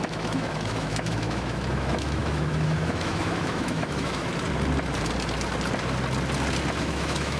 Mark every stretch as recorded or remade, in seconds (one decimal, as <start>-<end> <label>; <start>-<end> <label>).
0.0-4.3 remade; 4.3-6.8 recorded; 6.8-7.4 remade